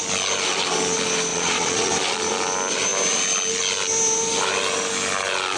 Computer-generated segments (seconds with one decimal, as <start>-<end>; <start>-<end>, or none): 1.3-1.9